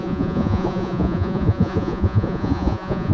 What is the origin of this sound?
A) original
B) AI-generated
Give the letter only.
B